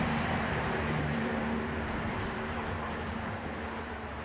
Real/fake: fake